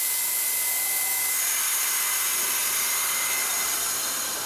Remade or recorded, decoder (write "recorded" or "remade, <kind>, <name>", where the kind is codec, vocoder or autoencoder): recorded